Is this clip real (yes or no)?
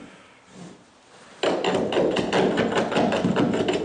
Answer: yes